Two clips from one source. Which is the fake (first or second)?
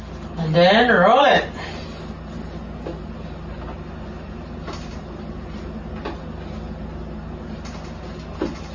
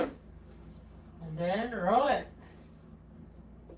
second